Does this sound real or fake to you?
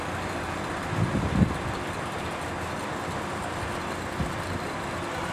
fake